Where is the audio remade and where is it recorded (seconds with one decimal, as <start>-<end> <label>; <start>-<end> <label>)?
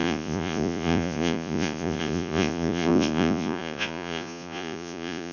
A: 0.0-5.3 remade